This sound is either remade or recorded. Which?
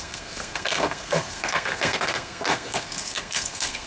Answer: remade